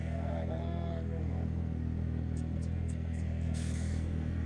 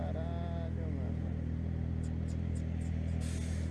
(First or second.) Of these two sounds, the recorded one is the second